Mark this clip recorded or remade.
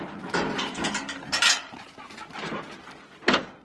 recorded